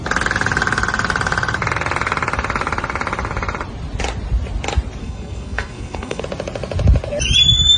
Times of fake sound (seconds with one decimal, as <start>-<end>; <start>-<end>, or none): 5.0-6.2